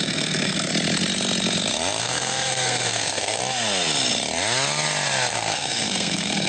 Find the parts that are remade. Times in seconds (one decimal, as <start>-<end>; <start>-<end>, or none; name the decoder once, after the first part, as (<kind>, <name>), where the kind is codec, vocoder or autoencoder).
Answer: 0.0-0.7 (codec, SNAC); 2.0-3.4; 5.3-6.5